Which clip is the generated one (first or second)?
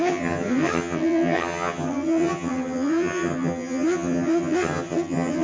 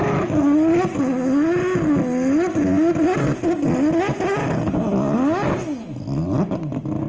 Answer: first